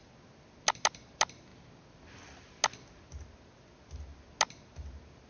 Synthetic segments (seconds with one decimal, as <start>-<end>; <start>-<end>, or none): none